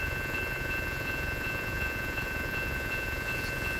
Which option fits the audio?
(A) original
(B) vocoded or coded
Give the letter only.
B